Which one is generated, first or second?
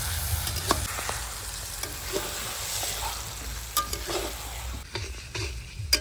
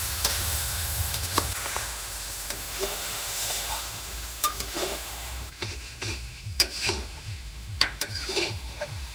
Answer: second